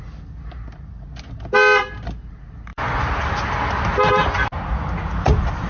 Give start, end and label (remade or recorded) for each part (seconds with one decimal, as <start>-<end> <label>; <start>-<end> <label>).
0.0-2.7 recorded; 2.7-3.7 remade; 3.7-5.7 recorded